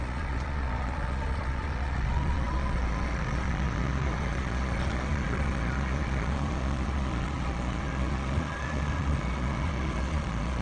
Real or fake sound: fake